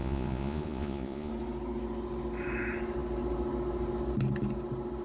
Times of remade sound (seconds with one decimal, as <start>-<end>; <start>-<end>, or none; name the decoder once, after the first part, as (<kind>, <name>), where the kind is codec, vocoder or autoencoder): 0.0-1.3 (vocoder, Vocos)

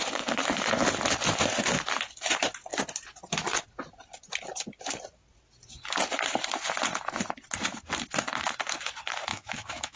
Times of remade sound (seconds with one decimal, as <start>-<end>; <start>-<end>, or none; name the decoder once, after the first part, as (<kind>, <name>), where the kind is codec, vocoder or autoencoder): 9.3-10.0 (autoencoder, DAC-VAE)

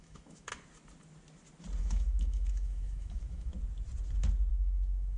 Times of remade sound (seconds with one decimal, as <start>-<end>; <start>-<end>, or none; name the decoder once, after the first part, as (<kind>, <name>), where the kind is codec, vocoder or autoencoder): 0.0-0.5 (autoencoder, DAC-VAE); 1.8-3.5; 4.5-5.2

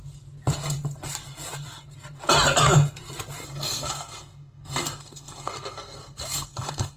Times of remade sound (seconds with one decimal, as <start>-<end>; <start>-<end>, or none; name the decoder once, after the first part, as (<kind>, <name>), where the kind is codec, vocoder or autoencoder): 3.4-7.0 (codec, SNAC)

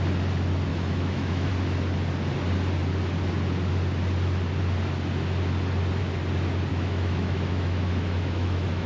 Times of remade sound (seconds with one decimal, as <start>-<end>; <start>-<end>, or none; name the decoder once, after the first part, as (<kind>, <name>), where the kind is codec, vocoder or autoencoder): 0.7-1.5 (autoencoder, DAC-VAE); 6.7-8.9

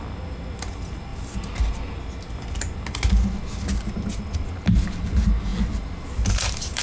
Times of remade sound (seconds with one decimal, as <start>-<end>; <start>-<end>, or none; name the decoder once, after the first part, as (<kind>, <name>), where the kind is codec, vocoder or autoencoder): none

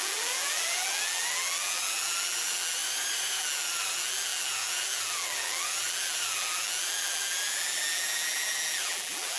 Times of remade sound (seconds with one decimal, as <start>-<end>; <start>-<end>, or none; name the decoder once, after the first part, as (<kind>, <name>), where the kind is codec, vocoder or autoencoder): 0.0-2.8 (vocoder, BigVGAN v2); 3.4-9.4